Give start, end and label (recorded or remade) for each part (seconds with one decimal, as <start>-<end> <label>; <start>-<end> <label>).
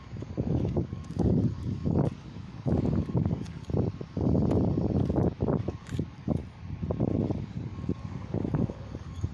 0.0-3.7 remade; 3.7-5.7 recorded; 5.7-6.4 remade; 6.4-7.4 recorded; 7.4-9.3 remade